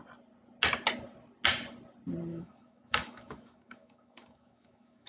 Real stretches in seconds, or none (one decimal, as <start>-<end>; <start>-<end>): 0.0-2.3

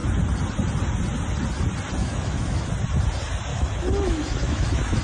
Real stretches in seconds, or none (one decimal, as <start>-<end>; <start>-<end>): 0.0-2.0; 2.7-3.5

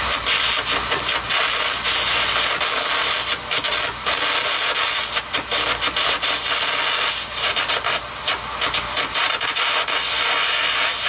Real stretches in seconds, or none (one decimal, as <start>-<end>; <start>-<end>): 0.0-11.1

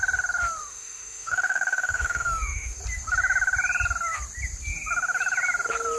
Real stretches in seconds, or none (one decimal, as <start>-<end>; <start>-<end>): 0.0-0.6; 2.8-6.0

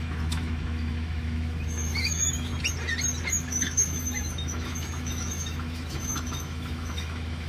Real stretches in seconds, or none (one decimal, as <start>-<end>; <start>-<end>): 2.5-3.3

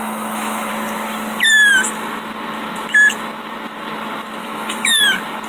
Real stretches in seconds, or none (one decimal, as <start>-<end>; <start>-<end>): 0.7-4.4; 5.0-5.5

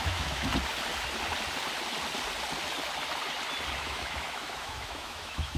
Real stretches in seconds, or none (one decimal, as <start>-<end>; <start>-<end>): 0.5-3.8

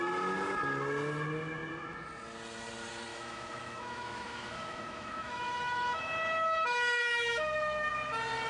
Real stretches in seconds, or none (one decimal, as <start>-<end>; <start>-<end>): 0.0-3.1; 7.9-8.5